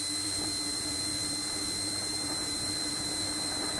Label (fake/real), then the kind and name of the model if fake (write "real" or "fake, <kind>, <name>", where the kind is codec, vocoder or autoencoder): fake, vocoder, BigVGAN v2